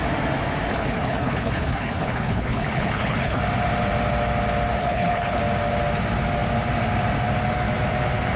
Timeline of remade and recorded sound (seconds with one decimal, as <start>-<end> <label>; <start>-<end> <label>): 0.0-0.7 recorded; 0.7-3.4 remade; 3.4-4.8 recorded; 4.8-5.4 remade; 5.4-8.4 recorded